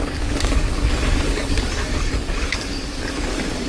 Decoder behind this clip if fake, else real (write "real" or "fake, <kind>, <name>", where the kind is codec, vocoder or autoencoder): fake, codec, DAC